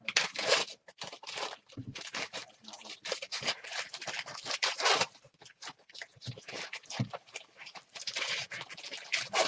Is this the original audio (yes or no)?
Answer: no